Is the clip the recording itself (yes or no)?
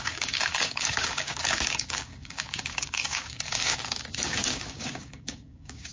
no